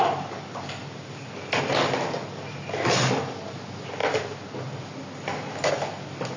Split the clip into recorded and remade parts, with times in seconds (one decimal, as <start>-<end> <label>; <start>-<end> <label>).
0.0-6.4 recorded